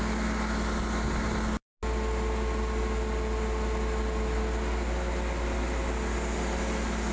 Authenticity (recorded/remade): recorded